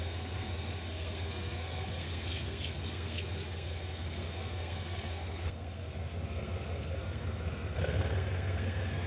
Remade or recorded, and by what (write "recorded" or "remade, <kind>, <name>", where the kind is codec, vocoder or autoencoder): remade, codec, SNAC